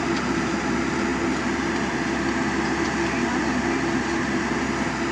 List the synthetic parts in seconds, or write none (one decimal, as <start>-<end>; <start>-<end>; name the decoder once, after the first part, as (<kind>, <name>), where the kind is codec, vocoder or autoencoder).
none